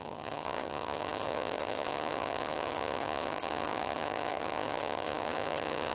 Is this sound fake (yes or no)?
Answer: yes